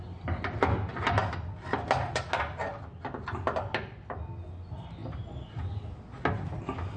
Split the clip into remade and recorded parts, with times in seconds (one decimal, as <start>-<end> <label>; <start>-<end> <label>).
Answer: 0.0-7.0 recorded